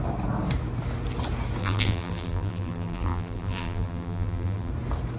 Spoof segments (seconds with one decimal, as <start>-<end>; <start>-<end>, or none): 1.6-4.7

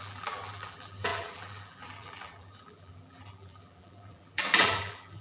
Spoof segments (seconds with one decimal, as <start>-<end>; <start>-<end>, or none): 0.0-5.2

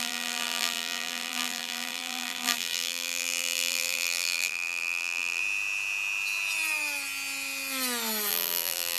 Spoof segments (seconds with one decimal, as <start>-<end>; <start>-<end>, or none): 0.0-5.4; 8.3-9.0

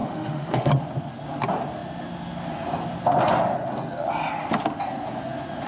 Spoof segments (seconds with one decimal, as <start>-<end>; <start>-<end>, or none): 0.0-0.7

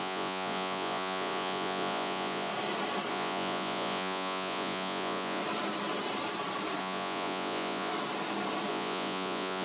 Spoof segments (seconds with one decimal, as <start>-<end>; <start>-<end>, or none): 0.0-2.5; 3.1-5.4; 6.8-7.9; 8.7-9.6